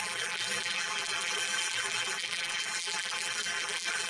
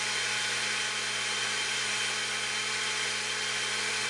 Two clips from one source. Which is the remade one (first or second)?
first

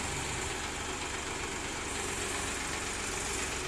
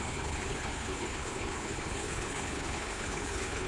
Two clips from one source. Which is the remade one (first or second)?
second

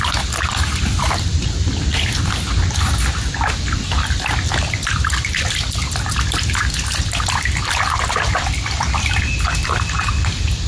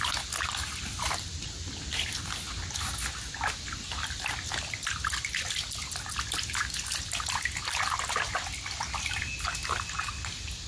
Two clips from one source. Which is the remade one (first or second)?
first